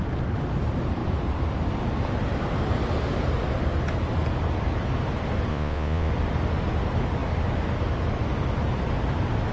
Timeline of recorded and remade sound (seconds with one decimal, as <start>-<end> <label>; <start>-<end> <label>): 0.0-5.5 recorded; 5.5-6.1 remade; 6.1-9.5 recorded